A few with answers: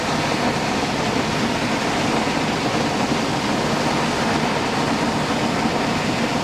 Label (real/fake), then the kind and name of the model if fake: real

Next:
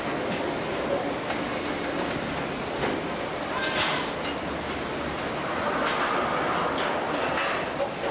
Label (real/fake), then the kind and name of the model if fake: real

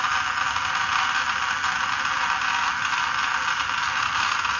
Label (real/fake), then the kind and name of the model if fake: real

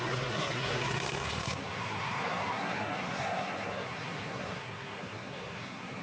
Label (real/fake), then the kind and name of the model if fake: fake, codec, SNAC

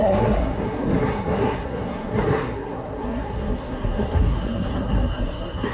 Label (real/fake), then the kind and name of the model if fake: fake, codec, SNAC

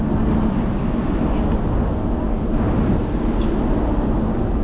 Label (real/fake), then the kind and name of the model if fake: real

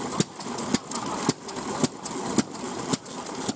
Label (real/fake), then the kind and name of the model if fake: real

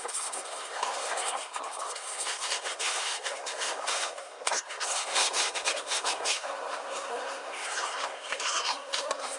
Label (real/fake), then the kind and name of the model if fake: fake, codec, SNAC